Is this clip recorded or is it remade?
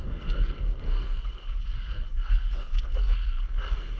remade